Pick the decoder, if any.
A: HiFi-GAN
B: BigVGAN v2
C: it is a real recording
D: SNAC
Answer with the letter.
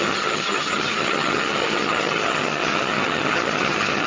A